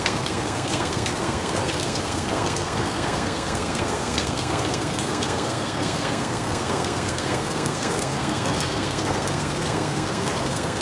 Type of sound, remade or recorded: remade